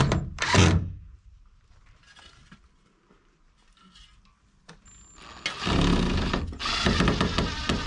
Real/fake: real